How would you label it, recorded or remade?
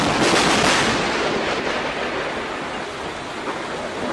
recorded